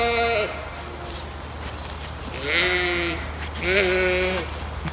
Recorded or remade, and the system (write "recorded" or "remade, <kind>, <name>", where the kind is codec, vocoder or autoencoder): recorded